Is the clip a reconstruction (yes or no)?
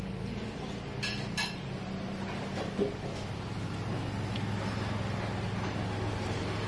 no